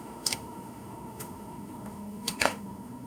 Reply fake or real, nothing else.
fake